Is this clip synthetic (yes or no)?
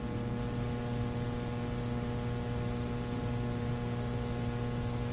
no